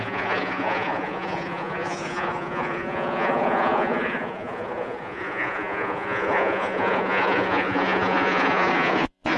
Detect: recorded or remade remade